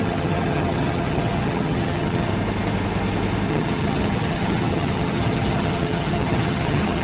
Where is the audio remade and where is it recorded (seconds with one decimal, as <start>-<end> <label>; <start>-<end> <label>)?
0.0-2.3 remade; 2.3-3.5 recorded; 3.5-7.0 remade